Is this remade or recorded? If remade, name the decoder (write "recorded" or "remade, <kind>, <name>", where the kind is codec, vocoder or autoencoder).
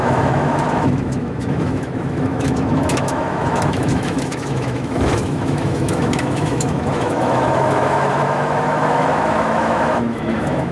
remade, autoencoder, DAC-VAE